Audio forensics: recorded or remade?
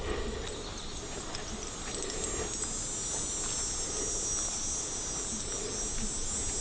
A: recorded